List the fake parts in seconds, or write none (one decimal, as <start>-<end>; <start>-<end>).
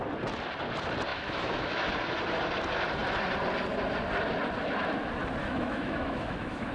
1.1-1.9; 5.4-6.7